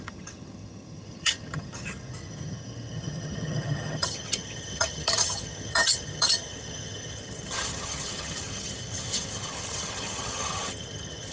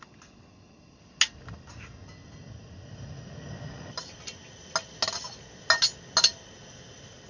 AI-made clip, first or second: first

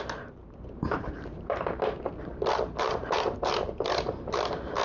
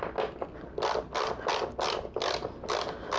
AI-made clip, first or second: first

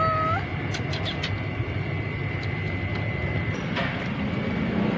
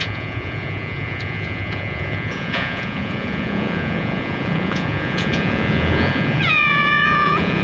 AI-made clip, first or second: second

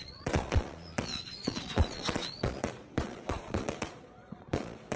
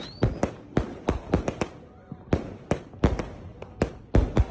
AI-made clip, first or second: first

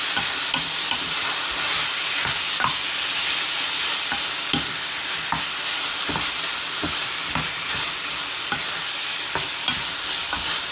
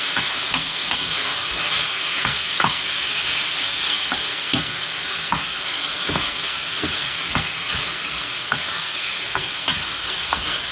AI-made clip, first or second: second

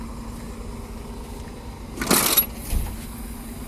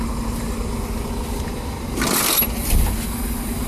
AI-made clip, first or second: second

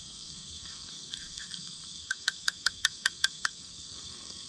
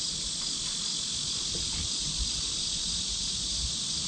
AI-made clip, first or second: first